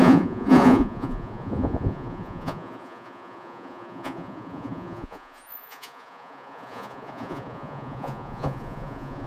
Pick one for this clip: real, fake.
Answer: fake